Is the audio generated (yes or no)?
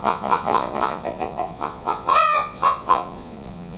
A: yes